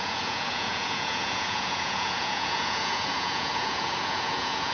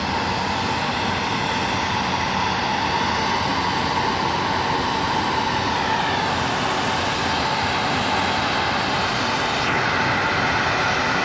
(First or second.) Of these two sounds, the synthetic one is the first